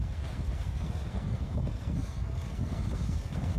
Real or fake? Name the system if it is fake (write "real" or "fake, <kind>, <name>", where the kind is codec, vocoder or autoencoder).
fake, codec, SNAC